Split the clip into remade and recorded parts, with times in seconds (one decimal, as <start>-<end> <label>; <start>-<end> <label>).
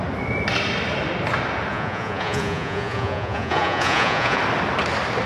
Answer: 0.0-1.7 recorded; 1.7-4.4 remade; 4.4-5.3 recorded